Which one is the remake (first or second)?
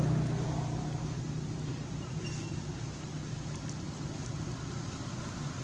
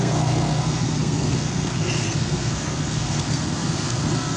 second